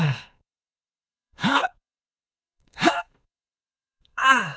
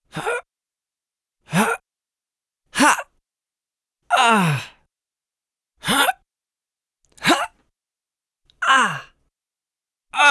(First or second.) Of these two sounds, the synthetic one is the first